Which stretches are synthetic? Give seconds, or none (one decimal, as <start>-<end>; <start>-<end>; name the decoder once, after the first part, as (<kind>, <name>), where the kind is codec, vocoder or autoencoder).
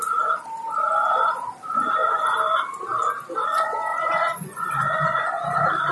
3.9-5.4 (vocoder, Vocos)